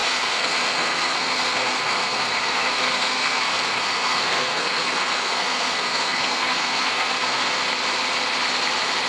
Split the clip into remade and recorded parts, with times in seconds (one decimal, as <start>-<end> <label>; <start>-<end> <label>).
0.0-7.6 remade; 7.6-9.1 recorded

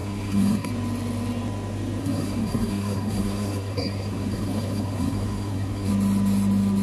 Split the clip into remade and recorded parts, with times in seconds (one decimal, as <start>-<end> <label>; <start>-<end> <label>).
0.0-0.7 remade; 0.7-2.0 recorded; 2.0-5.9 remade; 5.9-6.8 recorded

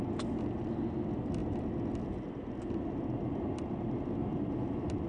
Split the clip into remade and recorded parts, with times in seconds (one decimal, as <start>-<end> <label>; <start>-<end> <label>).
0.0-5.1 recorded

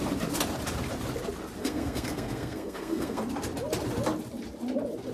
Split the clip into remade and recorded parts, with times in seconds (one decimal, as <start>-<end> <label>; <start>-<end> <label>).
0.0-1.6 recorded; 1.6-3.2 remade; 3.2-5.1 recorded

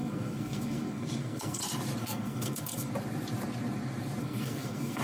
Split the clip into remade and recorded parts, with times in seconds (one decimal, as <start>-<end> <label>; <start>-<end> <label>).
0.0-1.6 remade; 1.6-2.0 recorded; 2.0-2.9 remade; 2.9-4.2 recorded; 4.2-5.0 remade